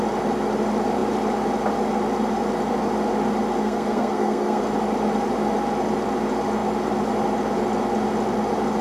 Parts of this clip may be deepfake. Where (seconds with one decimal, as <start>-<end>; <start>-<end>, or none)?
3.6-4.6